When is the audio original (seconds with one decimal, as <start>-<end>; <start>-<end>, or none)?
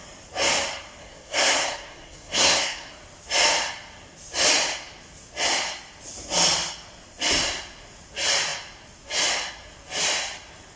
0.0-1.0; 2.9-10.8